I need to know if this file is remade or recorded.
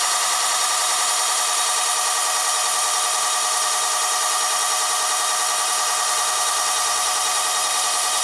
remade